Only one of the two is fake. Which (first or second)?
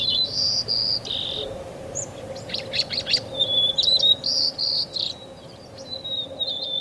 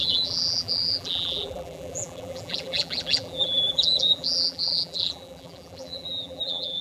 second